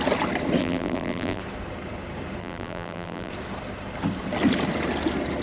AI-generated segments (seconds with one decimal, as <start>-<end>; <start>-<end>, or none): 0.6-1.4; 2.4-3.3